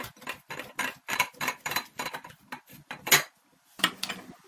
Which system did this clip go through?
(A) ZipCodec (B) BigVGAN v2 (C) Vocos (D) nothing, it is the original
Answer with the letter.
B